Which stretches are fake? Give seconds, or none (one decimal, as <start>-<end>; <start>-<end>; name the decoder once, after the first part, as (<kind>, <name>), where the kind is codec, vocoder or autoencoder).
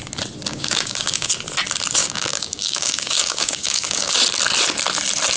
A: 0.5-1.3 (codec, DAC); 2.0-4.1